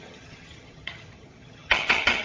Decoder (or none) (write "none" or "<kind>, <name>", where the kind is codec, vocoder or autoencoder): vocoder, HiFi-GAN